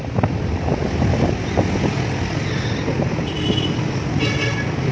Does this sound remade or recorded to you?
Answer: recorded